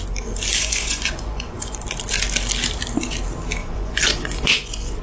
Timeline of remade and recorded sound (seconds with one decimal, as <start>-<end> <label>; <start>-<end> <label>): 0.0-0.5 recorded; 0.5-1.8 remade; 1.8-3.6 recorded; 3.6-5.0 remade